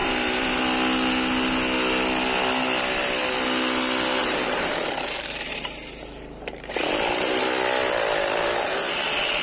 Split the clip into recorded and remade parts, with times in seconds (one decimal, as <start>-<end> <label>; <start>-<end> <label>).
0.0-0.6 remade; 0.6-4.2 recorded; 4.2-6.7 remade; 6.7-9.4 recorded